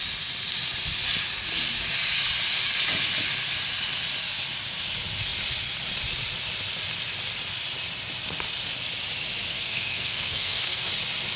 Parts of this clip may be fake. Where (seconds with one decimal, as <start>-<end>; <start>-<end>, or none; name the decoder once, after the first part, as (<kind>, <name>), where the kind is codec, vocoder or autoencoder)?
9.5-10.9 (codec, SNAC)